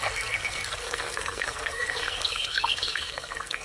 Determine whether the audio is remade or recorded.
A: remade